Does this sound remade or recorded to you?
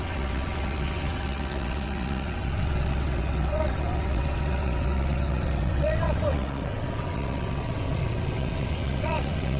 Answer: remade